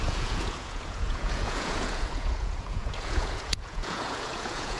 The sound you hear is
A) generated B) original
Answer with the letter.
A